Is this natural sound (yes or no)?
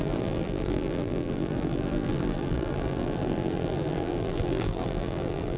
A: no